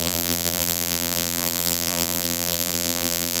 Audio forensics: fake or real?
fake